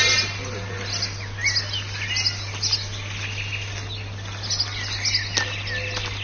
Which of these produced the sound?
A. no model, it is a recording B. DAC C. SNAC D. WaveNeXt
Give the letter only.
A